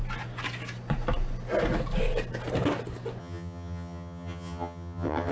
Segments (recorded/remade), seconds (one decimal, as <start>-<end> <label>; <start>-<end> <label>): 0.0-3.2 recorded; 3.2-5.3 remade